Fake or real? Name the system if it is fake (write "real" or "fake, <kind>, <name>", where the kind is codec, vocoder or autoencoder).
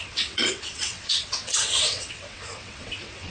fake, vocoder, WaveNeXt